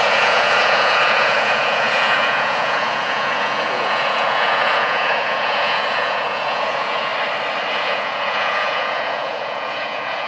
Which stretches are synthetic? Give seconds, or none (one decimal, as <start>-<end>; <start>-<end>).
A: 0.0-7.1; 7.7-10.3